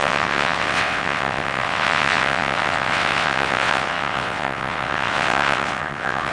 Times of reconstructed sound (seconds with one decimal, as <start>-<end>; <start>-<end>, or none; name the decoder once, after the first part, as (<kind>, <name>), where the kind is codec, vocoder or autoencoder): 0.0-6.3 (vocoder, WaveNeXt)